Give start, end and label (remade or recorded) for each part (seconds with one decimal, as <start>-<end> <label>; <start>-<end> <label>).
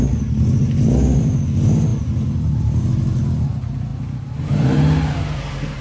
0.0-5.8 recorded